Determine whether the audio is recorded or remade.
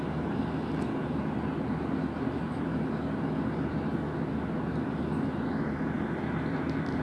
recorded